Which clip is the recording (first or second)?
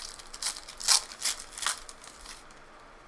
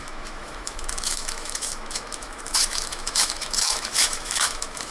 first